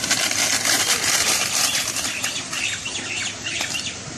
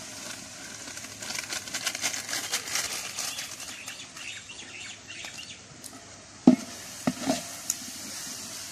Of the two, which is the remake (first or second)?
first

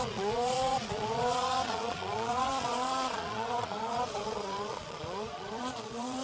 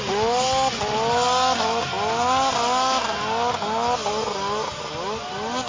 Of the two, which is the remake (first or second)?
first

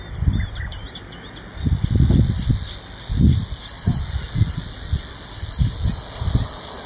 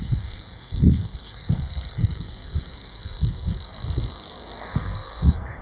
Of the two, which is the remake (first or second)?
second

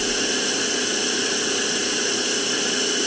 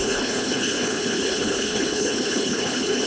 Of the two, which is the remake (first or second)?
second